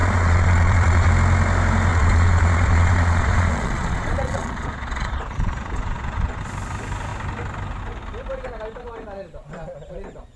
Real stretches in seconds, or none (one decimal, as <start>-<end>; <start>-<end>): 1.1-1.9; 6.4-10.4